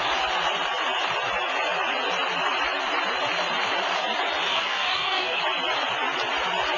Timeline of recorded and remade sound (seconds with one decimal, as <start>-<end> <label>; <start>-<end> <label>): 0.0-4.5 recorded; 4.5-5.4 remade; 5.4-6.8 recorded